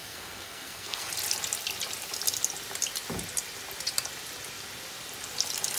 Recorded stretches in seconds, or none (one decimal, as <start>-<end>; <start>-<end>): 1.1-5.8